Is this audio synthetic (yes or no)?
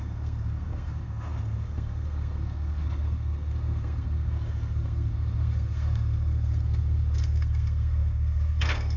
yes